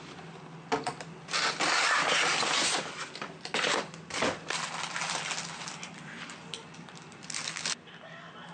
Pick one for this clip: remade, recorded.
recorded